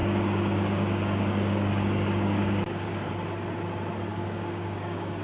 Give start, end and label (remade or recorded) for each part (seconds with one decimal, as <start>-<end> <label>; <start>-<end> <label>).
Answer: 0.0-3.1 remade; 3.1-4.1 recorded; 4.1-5.2 remade